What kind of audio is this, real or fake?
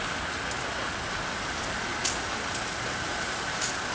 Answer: real